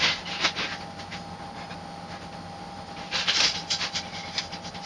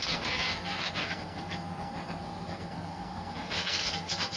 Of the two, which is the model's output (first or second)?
second